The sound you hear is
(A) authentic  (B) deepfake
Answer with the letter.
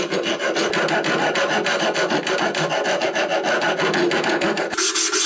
A